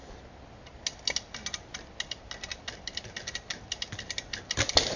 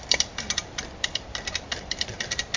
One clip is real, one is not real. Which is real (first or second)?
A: first